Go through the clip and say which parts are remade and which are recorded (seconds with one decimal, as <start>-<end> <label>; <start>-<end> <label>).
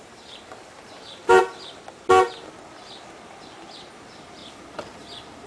0.0-1.4 remade; 1.4-4.4 recorded; 4.4-5.5 remade